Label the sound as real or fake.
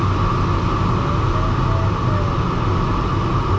real